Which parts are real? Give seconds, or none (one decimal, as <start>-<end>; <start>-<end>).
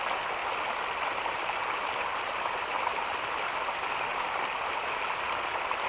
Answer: 0.0-5.9